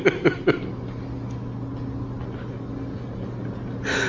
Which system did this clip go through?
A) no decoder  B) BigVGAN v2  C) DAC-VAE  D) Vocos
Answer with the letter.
A